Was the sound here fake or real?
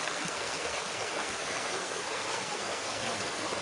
fake